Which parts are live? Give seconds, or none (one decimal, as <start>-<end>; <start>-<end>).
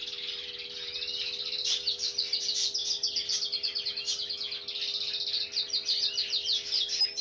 2.8-7.2